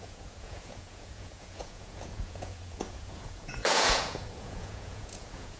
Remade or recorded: remade